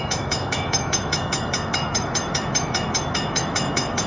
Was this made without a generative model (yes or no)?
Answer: no